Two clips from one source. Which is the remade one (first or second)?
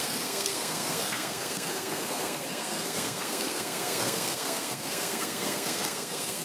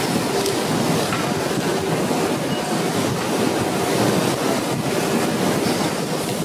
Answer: first